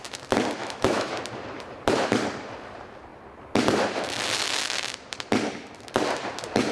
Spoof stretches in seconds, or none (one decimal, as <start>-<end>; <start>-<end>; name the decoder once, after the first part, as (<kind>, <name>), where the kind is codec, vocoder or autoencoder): 0.6-1.1 (autoencoder, DAC-VAE)